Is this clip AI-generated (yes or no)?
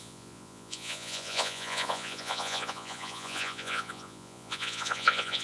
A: yes